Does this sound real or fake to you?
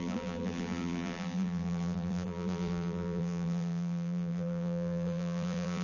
fake